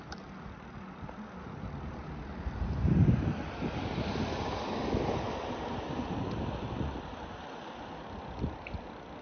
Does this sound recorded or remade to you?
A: recorded